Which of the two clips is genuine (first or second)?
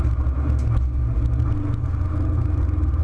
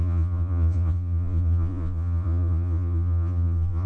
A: first